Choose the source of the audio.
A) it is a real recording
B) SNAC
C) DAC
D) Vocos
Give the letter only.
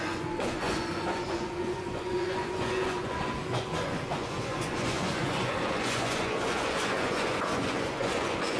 D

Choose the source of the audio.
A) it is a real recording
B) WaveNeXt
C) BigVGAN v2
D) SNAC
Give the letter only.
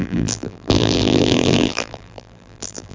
C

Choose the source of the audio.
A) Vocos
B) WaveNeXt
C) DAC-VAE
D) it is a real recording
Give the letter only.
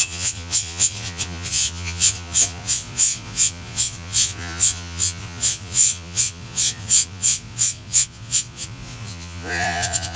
A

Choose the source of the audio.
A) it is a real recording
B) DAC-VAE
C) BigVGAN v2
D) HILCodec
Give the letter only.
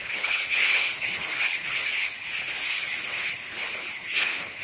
D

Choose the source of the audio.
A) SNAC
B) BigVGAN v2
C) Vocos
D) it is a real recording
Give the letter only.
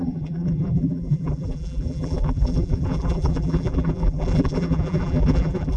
B